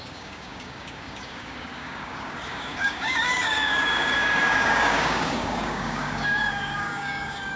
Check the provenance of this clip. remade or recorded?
remade